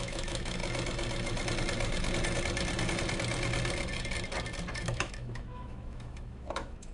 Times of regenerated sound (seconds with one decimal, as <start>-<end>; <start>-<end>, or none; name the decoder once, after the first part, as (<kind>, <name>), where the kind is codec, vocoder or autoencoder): 0.0-0.6 (autoencoder, DAC-VAE); 4.7-6.9